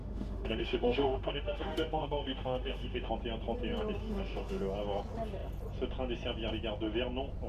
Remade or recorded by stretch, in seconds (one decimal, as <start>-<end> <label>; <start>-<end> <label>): 0.0-3.1 remade; 3.1-4.0 recorded; 4.0-4.6 remade; 4.6-7.5 recorded